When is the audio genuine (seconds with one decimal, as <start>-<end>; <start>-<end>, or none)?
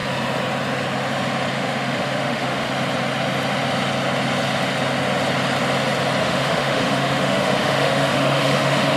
0.0-1.5; 2.7-6.2